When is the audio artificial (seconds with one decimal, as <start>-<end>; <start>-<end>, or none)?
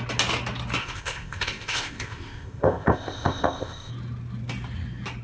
0.8-3.9